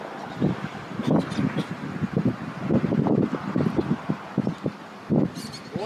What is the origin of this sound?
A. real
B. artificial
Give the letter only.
B